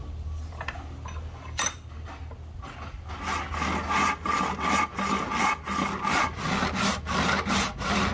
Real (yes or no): yes